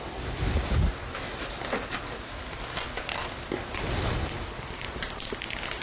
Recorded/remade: recorded